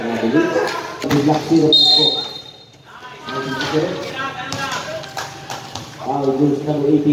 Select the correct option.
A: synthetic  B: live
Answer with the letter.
B